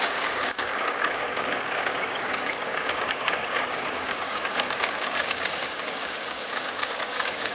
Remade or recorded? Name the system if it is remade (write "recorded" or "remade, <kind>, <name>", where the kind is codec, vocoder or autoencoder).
remade, codec, DAC